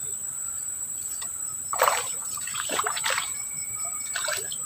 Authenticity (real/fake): fake